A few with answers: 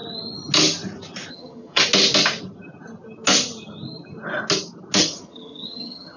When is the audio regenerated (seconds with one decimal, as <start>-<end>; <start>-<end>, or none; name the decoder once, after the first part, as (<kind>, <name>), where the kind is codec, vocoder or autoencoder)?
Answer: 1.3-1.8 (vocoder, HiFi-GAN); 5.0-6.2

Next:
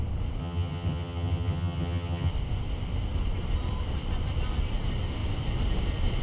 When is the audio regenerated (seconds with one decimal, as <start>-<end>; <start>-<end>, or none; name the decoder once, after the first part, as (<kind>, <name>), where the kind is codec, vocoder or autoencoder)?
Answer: 0.4-2.3 (vocoder, HiFi-GAN)

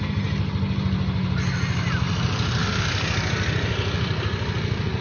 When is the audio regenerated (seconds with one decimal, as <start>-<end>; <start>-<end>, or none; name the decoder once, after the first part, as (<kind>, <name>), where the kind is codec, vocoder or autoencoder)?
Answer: none

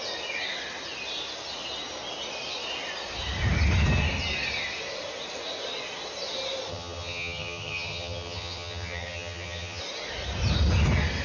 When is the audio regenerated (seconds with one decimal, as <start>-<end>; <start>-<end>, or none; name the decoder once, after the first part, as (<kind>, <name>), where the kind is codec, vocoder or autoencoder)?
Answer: 6.7-9.8 (vocoder, HiFi-GAN)

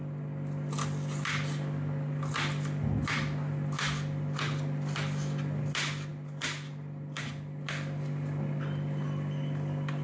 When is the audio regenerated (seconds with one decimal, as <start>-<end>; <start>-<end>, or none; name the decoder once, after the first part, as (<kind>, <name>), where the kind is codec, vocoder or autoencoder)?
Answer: none